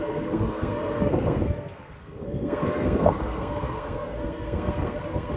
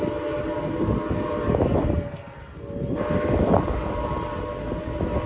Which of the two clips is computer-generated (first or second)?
first